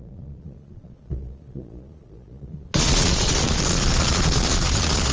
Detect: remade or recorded remade